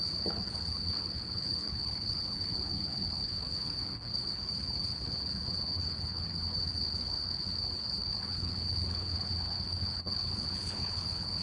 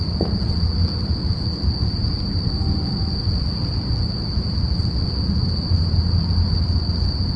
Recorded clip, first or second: second